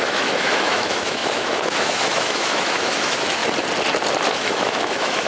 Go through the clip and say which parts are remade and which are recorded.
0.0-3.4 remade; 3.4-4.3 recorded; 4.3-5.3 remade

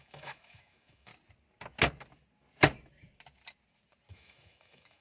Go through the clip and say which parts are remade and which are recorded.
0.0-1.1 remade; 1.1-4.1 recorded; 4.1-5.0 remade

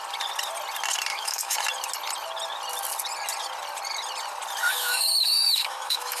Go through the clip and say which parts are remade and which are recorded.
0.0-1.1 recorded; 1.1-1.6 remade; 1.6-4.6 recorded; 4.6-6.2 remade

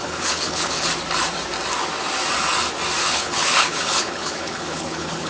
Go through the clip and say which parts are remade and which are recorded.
0.0-0.9 remade; 0.9-3.0 recorded; 3.0-5.3 remade

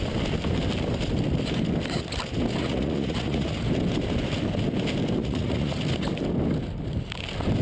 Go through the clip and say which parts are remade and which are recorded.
0.0-2.6 recorded; 2.6-3.7 remade; 3.7-5.2 recorded; 5.2-5.8 remade; 5.8-7.6 recorded